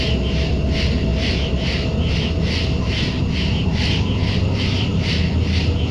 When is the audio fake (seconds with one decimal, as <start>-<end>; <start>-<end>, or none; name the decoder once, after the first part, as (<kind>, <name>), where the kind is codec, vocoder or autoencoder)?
none